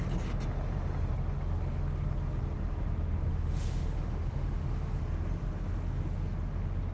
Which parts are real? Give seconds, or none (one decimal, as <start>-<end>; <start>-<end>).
0.0-3.3; 5.0-6.9